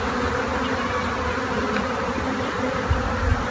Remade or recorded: recorded